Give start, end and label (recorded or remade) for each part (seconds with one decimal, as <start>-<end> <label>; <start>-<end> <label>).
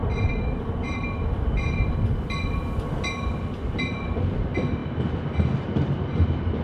0.0-2.0 remade; 2.0-6.6 recorded